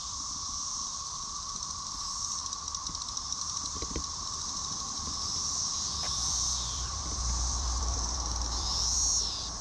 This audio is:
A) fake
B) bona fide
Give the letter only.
A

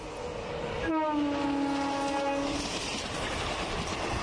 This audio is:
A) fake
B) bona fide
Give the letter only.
B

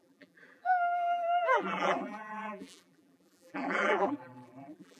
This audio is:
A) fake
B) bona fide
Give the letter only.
A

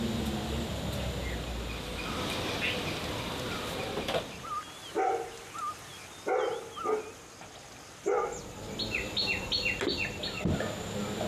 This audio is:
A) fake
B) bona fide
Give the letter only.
B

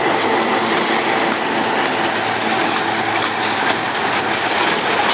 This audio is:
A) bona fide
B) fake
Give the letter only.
A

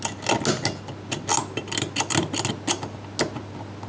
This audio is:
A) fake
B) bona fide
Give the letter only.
B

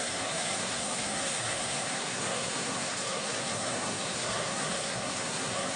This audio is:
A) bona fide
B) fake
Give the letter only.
B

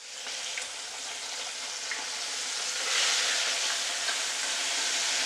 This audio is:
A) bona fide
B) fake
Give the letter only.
A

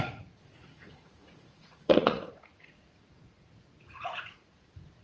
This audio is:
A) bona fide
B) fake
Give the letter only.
B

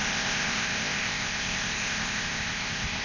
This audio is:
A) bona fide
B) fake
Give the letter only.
B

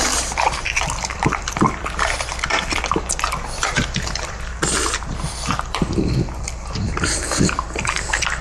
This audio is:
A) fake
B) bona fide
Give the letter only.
A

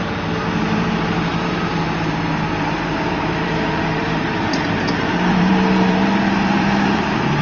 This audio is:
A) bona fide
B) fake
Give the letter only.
B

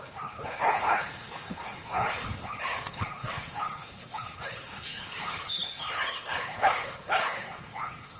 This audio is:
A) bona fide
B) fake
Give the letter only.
B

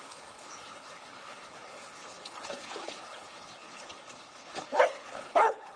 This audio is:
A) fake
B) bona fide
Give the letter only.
A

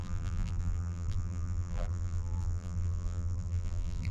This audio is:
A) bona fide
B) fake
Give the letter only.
B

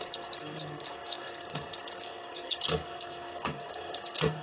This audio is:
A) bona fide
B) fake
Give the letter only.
B